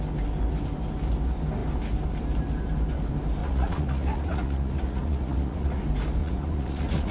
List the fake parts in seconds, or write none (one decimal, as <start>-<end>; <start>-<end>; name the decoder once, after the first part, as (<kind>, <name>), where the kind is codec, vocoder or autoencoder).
3.4-5.8 (vocoder, Vocos); 6.2-7.1